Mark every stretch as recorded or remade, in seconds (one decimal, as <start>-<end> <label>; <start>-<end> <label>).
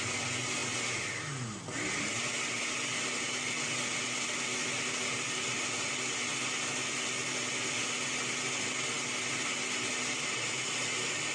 0.0-11.3 recorded